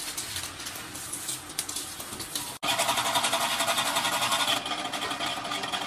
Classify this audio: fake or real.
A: real